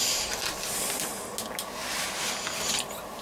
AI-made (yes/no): no